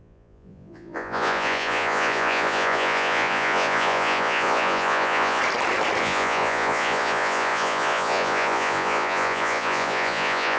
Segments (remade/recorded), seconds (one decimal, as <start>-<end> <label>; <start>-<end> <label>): 0.0-5.4 remade; 5.4-6.0 recorded; 6.0-10.6 remade